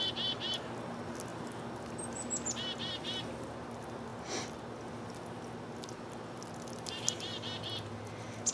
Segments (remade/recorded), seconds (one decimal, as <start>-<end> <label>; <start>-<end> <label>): 0.0-8.5 recorded